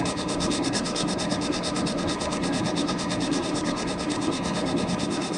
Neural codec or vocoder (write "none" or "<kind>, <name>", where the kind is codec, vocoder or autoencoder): codec, SNAC